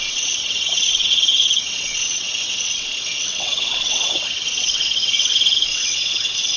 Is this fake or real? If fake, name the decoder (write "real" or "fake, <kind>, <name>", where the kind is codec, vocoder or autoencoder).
fake, vocoder, WaveNeXt